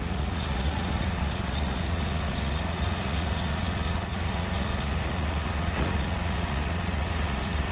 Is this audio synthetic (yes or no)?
yes